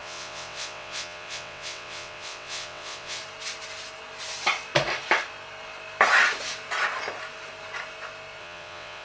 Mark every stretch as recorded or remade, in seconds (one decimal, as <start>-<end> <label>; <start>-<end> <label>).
0.0-3.2 remade; 3.2-8.4 recorded; 8.4-9.0 remade